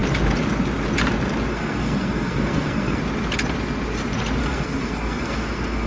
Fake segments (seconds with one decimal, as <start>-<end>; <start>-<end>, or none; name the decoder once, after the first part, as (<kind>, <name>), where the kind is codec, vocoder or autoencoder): 1.5-3.0 (codec, SNAC); 4.4-5.9